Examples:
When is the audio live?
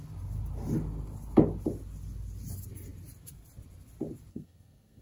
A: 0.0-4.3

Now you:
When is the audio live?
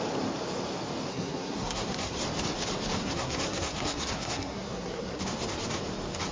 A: 0.0-1.1; 2.2-3.0; 5.2-6.3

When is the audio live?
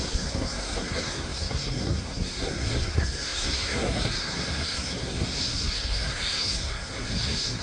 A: none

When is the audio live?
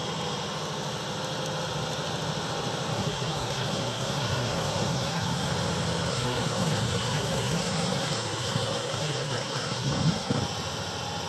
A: 0.0-2.9; 5.5-6.1; 10.4-11.3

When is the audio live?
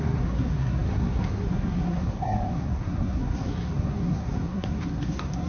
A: none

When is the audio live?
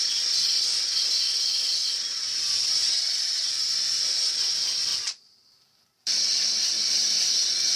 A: 0.0-7.8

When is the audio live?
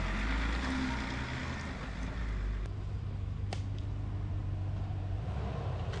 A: 0.0-6.0